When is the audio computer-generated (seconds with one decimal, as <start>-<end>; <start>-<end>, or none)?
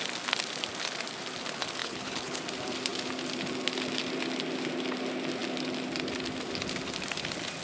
1.8-2.4